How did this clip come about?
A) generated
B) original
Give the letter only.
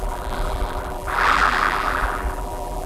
A